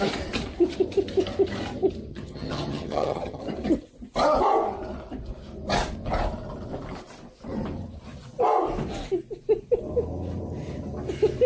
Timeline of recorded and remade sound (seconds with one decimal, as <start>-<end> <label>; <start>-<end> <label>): 0.0-2.1 recorded; 2.1-3.4 remade; 3.4-11.5 recorded